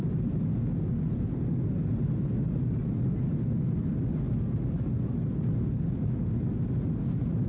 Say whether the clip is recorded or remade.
recorded